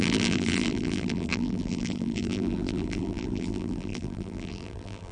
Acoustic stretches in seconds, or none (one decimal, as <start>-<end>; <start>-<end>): none